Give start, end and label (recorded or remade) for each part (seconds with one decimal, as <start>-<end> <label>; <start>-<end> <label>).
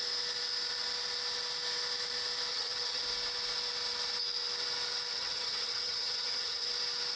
0.0-2.5 recorded; 2.5-3.0 remade; 3.0-5.1 recorded; 5.1-6.7 remade; 6.7-7.2 recorded